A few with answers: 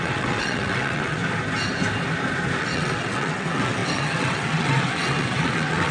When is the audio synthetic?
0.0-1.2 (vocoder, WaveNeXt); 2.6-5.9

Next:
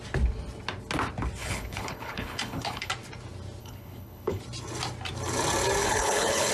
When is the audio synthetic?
1.4-2.9 (codec, HILCodec); 3.6-4.4; 5.8-6.5

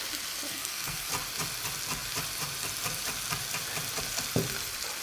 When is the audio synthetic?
0.5-1.1 (codec, SNAC)